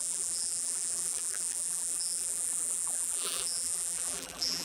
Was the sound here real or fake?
fake